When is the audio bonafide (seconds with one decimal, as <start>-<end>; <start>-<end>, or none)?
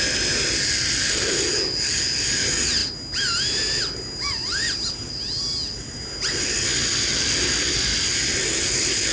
0.0-9.1